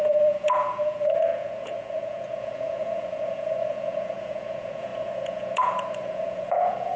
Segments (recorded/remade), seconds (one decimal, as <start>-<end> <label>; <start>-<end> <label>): 0.0-7.0 remade